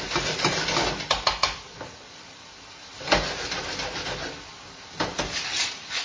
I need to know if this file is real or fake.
real